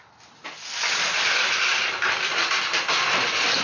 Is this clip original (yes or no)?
yes